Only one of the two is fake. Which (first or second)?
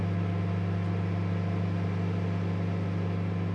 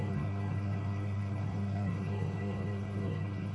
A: second